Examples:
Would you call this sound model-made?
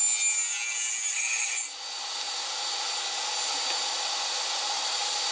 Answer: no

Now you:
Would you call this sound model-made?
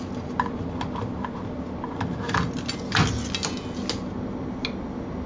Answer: no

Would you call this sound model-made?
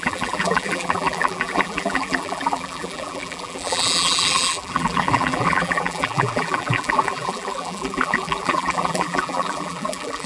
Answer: yes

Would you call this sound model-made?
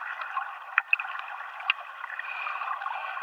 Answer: no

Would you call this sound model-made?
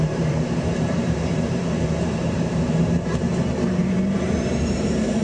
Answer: yes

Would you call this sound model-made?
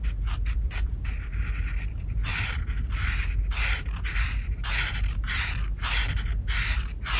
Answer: no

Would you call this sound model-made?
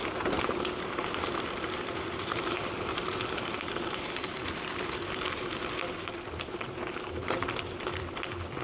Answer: yes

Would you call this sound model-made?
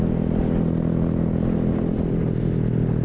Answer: no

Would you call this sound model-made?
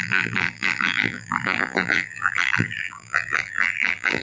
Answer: yes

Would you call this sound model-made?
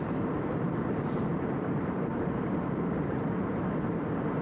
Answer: yes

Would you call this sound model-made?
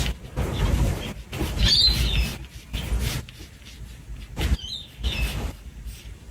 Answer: no